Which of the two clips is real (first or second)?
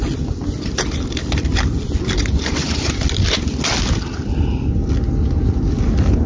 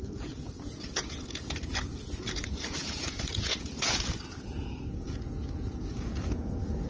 first